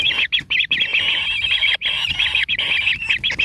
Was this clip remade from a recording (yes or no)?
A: no